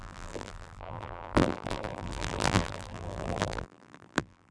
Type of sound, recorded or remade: remade